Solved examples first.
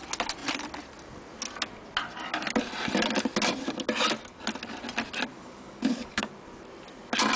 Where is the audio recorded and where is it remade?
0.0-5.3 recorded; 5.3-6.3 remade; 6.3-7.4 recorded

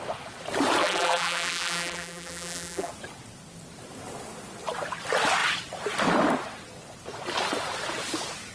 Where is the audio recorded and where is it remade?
0.0-0.8 recorded; 0.8-2.9 remade; 2.9-8.5 recorded

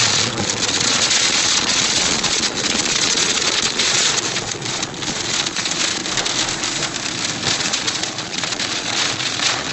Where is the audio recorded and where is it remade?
0.0-6.0 remade; 6.0-7.5 recorded; 7.5-9.7 remade

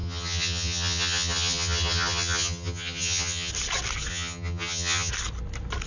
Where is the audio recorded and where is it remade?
0.0-3.5 remade; 3.5-4.1 recorded; 4.1-5.1 remade; 5.1-5.9 recorded